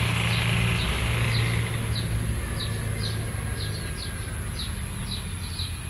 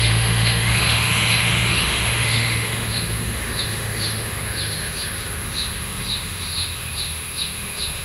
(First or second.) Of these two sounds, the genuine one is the first